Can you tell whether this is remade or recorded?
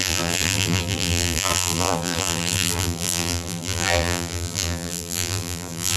remade